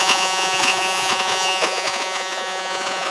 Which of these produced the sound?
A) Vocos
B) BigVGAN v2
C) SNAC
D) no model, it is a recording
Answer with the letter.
A